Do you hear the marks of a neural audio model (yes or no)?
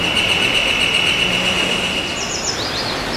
no